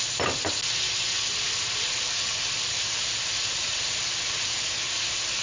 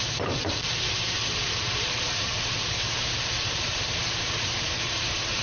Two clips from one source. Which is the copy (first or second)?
second